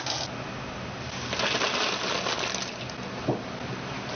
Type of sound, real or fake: real